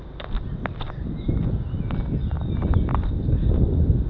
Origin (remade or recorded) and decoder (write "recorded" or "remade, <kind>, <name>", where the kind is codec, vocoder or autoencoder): recorded